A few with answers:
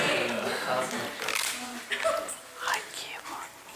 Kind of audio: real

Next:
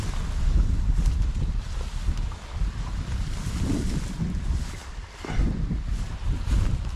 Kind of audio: real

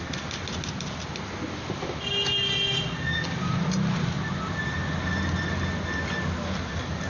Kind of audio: real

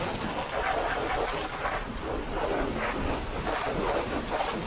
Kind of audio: real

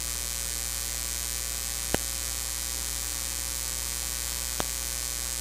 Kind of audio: real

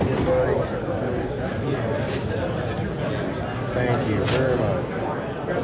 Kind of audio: real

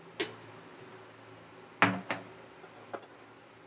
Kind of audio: real